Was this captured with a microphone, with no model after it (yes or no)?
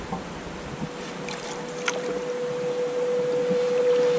yes